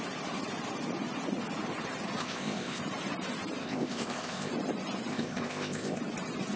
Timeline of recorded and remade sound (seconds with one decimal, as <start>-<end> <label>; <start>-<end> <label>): 0.0-2.2 recorded; 2.2-2.8 remade; 2.8-3.6 recorded; 3.6-4.5 remade; 4.5-5.1 recorded; 5.1-6.0 remade; 6.0-6.6 recorded